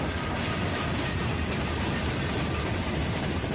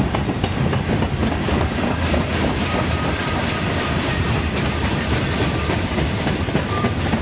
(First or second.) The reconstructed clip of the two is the second